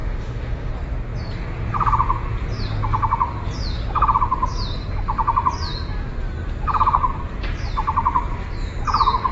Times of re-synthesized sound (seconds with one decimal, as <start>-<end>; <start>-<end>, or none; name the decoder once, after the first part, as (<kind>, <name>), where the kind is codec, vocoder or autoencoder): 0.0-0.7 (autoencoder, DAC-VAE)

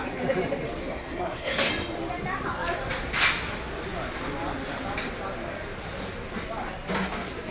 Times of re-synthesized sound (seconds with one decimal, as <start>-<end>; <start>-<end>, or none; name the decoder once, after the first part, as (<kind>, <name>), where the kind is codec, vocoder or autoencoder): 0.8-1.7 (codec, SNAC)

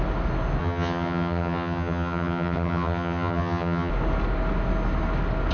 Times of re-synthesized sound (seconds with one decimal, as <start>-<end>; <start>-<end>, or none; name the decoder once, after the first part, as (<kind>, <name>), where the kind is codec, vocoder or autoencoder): 0.6-3.9 (vocoder, HiFi-GAN)

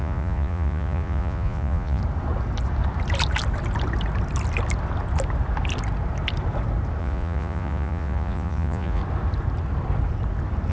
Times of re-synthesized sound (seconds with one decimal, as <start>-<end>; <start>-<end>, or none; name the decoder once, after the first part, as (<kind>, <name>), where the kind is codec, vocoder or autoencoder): 0.0-2.0 (vocoder, Vocos); 7.0-9.0

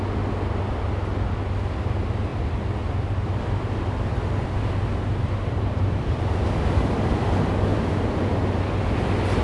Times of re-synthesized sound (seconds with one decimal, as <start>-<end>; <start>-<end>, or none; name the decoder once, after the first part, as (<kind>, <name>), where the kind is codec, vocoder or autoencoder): 2.3-6.2 (vocoder, BigVGAN v2); 7.7-8.6

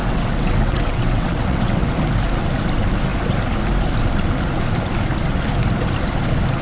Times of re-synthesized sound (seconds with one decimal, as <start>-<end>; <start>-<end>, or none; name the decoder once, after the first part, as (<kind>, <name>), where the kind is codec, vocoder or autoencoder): 0.0-1.9 (vocoder, WaveNeXt)

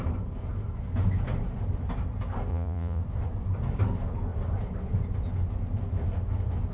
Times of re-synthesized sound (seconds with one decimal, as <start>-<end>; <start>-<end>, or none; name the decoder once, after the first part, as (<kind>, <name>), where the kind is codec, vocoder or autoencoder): 2.5-3.0 (vocoder, Vocos)

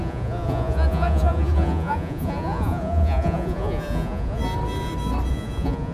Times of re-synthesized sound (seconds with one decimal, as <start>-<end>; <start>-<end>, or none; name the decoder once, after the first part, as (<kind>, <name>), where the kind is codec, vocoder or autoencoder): 0.0-4.4 (vocoder, Vocos); 5.3-5.9